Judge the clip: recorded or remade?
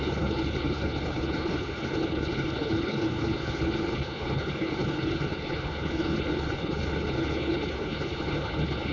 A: remade